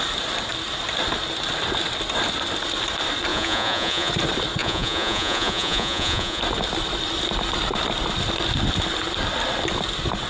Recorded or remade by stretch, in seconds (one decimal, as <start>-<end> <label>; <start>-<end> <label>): 0.0-3.3 recorded; 3.3-4.1 remade; 4.1-4.6 recorded; 4.6-6.4 remade; 6.4-10.3 recorded